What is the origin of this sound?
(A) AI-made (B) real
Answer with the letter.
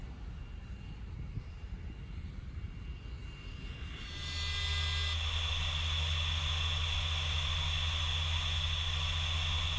B